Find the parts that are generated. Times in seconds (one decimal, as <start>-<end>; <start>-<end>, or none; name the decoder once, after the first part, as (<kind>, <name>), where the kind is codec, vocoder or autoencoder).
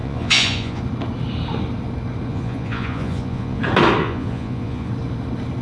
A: 0.0-0.8 (vocoder, Vocos); 2.3-3.6; 4.0-4.9